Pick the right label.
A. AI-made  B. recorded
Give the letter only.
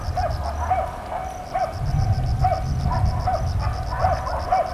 B